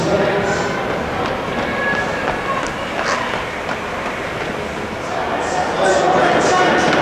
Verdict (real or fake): real